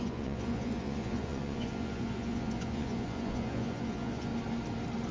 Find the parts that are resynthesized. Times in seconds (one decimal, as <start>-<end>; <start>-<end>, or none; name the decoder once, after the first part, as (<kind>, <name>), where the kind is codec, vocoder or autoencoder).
0.0-4.3 (vocoder, Vocos)